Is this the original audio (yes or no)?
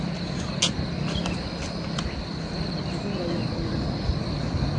yes